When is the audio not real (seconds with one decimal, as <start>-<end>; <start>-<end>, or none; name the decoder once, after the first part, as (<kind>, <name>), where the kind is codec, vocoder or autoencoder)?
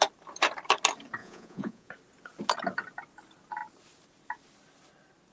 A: 1.2-1.9 (vocoder, Vocos)